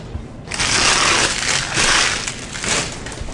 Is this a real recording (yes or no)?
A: yes